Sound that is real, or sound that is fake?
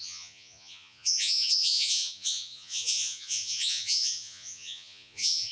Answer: fake